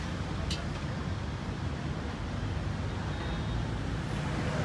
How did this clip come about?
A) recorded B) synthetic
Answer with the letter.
A